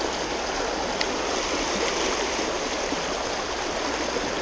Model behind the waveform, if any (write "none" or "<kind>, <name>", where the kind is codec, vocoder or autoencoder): none